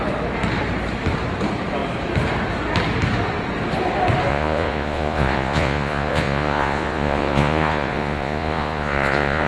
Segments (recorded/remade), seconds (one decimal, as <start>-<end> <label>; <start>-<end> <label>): 0.0-4.3 recorded; 4.3-9.5 remade